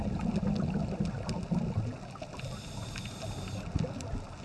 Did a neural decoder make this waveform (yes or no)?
no